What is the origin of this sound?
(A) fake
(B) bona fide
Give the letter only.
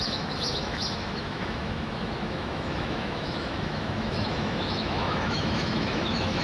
A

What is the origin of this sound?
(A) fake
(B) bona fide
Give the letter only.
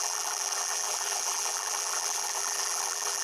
A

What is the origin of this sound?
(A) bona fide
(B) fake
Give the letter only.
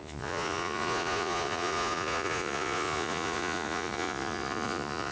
B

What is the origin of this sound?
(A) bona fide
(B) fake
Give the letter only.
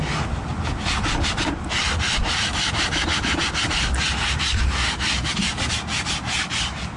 A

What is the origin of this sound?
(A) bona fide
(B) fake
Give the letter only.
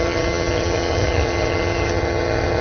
B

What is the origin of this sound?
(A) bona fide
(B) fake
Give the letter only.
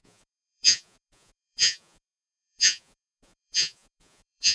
B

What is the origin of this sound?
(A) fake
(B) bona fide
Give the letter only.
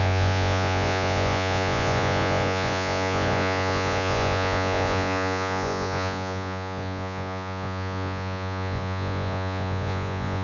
A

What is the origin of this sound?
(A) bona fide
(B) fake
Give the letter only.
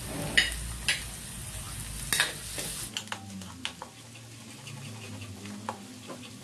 A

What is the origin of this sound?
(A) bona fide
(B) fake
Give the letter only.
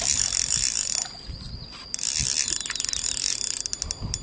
A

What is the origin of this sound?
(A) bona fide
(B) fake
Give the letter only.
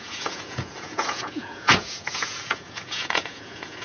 B